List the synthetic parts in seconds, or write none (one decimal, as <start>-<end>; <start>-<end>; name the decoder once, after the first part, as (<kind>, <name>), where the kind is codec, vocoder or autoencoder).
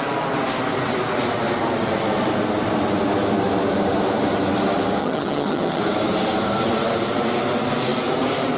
5.0-5.8 (vocoder, HiFi-GAN)